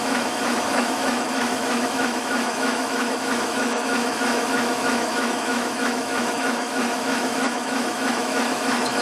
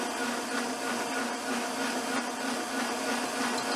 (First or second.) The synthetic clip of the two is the first